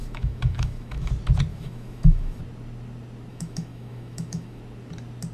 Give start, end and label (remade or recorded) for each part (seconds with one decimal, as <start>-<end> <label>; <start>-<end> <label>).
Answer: 0.0-1.1 remade; 1.1-1.5 recorded; 1.5-2.4 remade; 2.4-3.3 recorded; 3.3-4.6 remade; 4.6-5.3 recorded